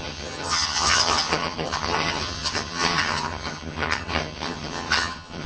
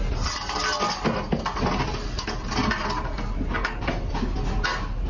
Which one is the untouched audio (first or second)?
second